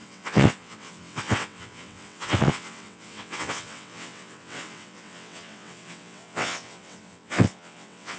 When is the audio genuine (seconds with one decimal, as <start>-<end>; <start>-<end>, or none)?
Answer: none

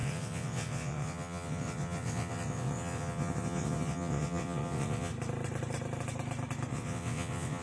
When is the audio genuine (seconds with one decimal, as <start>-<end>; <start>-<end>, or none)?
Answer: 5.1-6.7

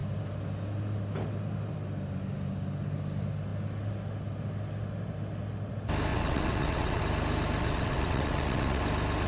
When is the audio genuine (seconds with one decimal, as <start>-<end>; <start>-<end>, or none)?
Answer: 0.0-6.1; 7.0-7.6; 8.8-9.3

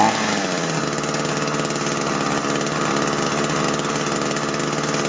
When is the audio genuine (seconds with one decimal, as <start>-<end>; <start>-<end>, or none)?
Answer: 0.0-5.1

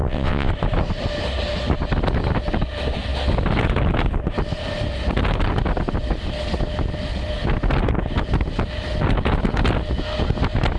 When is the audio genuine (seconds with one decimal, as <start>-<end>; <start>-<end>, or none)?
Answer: 0.5-10.8